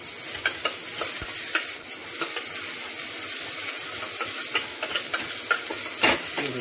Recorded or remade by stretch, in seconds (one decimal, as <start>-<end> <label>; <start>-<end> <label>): 0.0-6.6 recorded